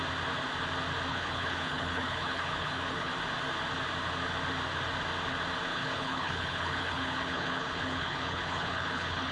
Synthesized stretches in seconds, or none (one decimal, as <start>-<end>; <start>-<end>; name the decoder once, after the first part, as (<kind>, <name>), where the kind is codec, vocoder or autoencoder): 1.1-3.1 (codec, HILCodec); 5.7-9.3